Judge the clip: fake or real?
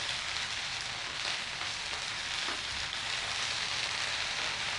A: real